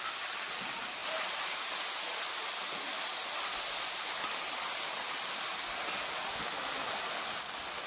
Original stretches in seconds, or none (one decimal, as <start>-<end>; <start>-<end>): 0.0-7.9